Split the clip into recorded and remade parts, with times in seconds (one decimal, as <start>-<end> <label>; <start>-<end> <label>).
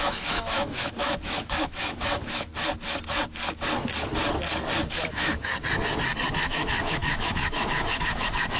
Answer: 0.0-2.5 remade; 2.5-4.9 recorded; 4.9-5.5 remade; 5.5-6.4 recorded; 6.4-8.6 remade